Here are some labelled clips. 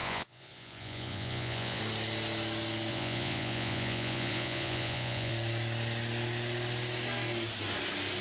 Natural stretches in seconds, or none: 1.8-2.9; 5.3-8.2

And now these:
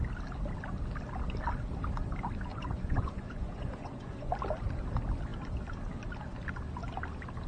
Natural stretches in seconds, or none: 0.0-2.5; 4.3-7.5

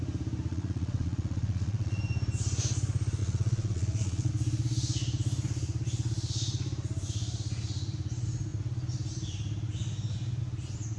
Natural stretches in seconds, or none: 0.0-0.5; 2.0-3.2; 4.3-11.0

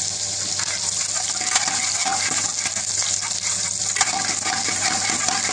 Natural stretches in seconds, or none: 0.0-5.5

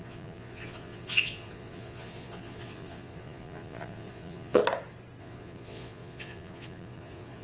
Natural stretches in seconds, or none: 4.6-5.2

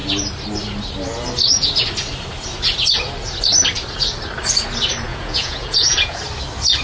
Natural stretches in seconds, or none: 0.0-5.1; 6.2-6.8

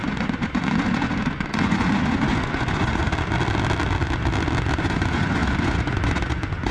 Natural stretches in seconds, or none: 3.1-4.8